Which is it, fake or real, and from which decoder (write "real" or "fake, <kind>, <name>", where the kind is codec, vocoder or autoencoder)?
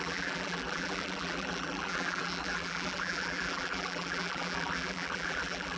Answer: fake, vocoder, BigVGAN v2